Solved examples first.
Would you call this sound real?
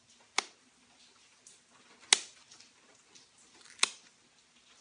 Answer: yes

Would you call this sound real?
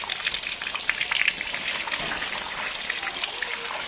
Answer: yes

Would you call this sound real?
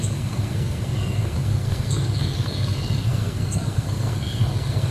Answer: no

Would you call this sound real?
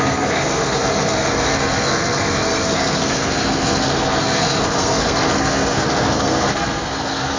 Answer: no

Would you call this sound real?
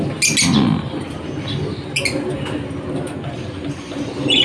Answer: yes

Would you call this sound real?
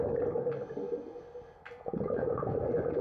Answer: yes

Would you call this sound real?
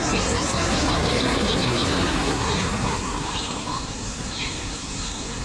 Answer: no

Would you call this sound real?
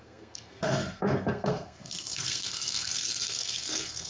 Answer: no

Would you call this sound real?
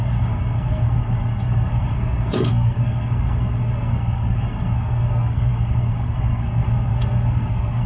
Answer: no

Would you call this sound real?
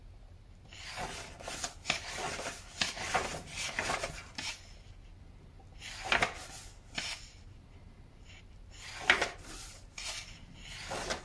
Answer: yes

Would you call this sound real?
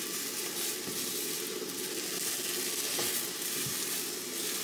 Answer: yes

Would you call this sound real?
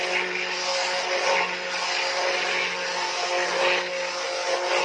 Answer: yes